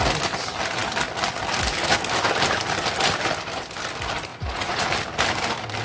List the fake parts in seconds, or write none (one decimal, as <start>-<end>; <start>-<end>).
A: 4.3-4.9